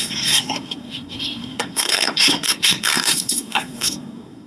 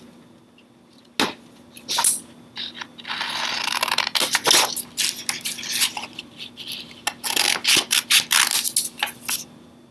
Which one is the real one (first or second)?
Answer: second